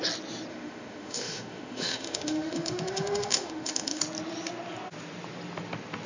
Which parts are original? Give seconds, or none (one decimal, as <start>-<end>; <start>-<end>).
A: 0.0-0.5; 4.0-6.1